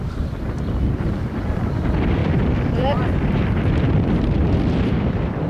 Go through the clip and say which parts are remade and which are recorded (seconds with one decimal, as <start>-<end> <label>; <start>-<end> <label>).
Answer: 0.0-2.2 recorded; 2.2-5.5 remade